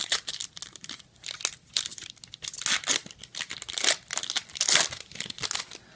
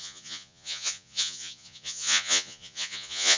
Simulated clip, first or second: second